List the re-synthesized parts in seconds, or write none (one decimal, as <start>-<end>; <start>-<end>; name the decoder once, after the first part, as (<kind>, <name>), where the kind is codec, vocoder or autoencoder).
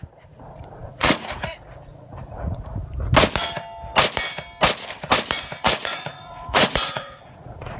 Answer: 0.0-2.8 (vocoder, Vocos); 5.6-7.8